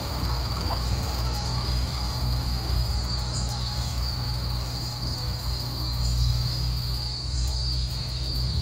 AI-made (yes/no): yes